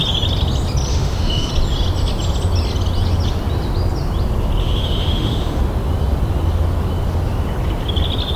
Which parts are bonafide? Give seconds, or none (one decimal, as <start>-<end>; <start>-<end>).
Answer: 0.0-0.9; 1.5-4.6; 5.6-8.4